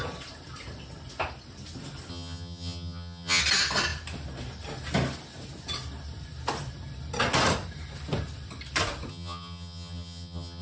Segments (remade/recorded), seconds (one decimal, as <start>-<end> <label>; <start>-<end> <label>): 0.0-2.1 recorded; 2.1-3.4 remade; 3.4-9.1 recorded; 9.1-10.6 remade